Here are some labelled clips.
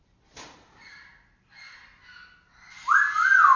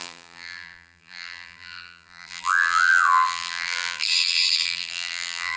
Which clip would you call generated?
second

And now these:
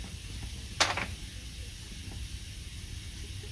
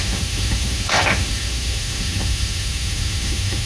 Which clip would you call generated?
second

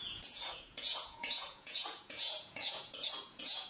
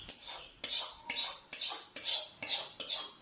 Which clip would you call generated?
first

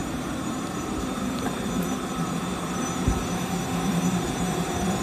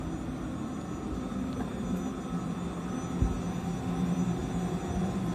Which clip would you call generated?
first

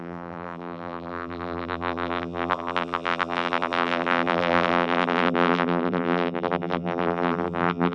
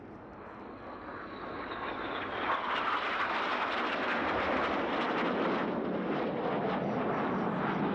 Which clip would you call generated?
first